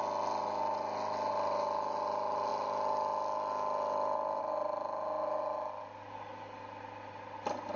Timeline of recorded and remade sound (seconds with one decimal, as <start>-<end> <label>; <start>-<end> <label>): 0.0-7.8 recorded